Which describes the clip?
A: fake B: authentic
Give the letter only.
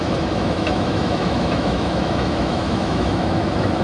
A